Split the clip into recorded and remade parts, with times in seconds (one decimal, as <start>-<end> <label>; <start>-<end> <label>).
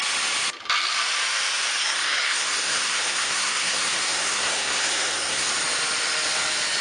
0.0-1.8 recorded; 1.8-5.5 remade; 5.5-6.8 recorded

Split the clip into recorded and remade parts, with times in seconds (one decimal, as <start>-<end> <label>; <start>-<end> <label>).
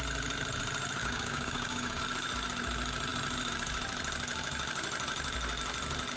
0.0-1.0 recorded; 1.0-2.0 remade; 2.0-6.2 recorded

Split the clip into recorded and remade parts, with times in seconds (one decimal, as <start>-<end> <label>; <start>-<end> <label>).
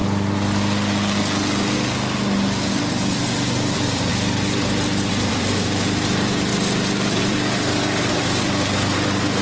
0.0-2.7 recorded; 2.7-4.1 remade; 4.1-5.1 recorded; 5.1-9.4 remade